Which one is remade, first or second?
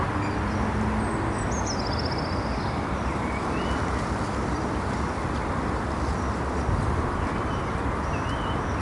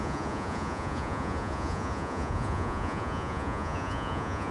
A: second